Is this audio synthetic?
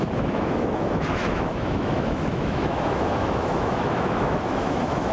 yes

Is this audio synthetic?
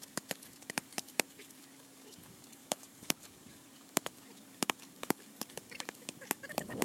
yes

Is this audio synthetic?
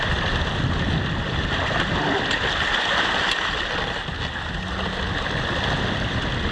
no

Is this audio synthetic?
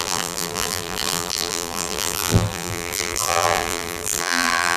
yes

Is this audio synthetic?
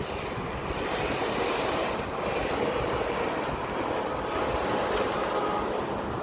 no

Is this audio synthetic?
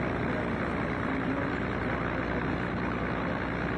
no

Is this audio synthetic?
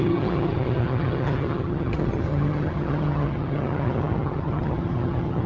yes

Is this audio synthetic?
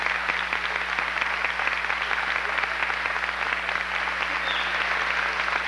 no